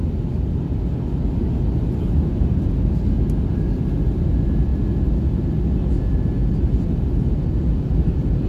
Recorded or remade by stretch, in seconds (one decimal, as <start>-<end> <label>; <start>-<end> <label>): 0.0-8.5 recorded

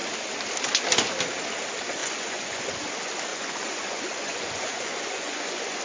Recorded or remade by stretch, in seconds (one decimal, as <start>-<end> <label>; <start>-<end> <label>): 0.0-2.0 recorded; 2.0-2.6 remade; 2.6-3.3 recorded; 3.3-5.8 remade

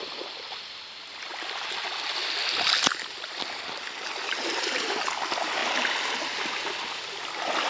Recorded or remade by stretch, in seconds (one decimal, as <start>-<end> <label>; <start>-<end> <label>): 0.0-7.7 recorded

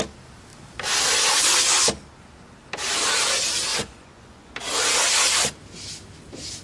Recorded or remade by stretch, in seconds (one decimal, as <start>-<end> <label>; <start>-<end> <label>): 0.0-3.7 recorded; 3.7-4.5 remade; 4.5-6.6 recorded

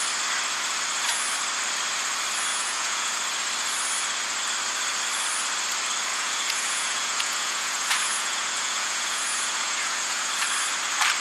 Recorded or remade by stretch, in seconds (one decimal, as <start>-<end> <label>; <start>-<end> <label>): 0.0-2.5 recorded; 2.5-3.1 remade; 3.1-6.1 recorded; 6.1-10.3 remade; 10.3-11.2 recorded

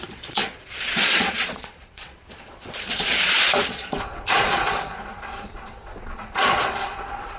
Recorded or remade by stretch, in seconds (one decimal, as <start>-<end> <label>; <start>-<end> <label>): 0.0-7.4 remade

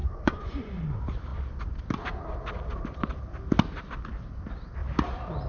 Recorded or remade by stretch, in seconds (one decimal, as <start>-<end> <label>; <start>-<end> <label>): 0.0-0.8 remade; 0.8-5.5 recorded

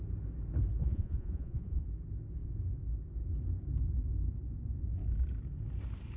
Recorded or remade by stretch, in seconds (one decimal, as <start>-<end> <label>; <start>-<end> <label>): 0.0-0.8 recorded; 0.8-1.8 remade; 1.8-6.2 recorded